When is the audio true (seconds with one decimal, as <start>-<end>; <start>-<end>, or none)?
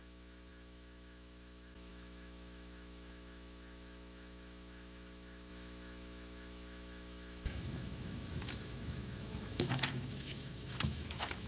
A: none